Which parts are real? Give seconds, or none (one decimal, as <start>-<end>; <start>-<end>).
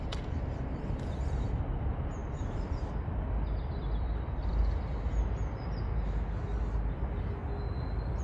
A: 5.9-6.9; 7.4-8.2